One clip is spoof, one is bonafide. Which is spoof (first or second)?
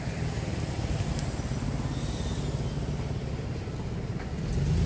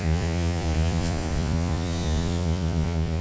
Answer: second